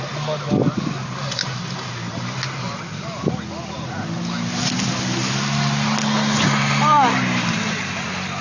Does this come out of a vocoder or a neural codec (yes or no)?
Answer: no